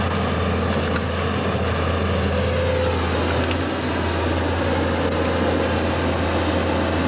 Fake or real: real